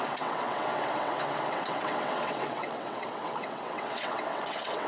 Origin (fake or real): fake